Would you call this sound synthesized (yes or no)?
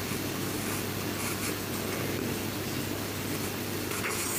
no